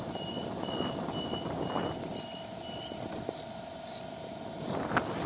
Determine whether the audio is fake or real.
real